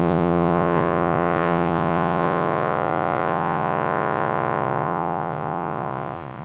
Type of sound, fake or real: fake